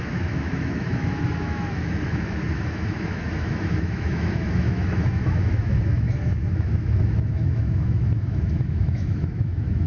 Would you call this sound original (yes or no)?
no